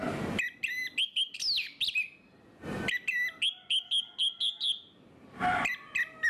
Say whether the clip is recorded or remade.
recorded